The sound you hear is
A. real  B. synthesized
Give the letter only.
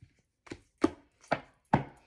A